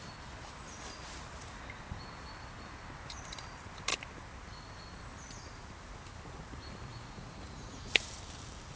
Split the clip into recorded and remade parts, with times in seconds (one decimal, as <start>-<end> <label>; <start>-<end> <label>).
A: 0.0-6.9 recorded; 6.9-8.1 remade; 8.1-8.8 recorded